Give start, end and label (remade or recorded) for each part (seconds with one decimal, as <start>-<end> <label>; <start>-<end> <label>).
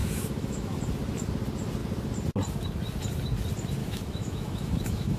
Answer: 0.0-0.8 remade; 0.8-3.8 recorded; 3.8-5.2 remade